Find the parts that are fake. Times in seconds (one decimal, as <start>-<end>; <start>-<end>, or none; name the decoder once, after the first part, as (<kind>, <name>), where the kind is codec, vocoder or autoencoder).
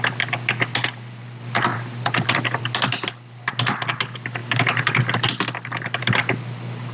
1.7-2.6 (vocoder, BigVGAN v2)